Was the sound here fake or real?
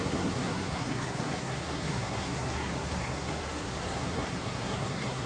fake